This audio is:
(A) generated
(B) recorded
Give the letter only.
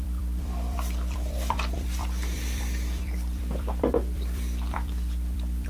A